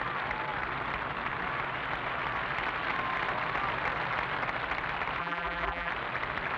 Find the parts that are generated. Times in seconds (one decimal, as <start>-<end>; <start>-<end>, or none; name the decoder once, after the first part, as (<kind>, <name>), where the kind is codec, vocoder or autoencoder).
5.2-5.9 (vocoder, BigVGAN v2)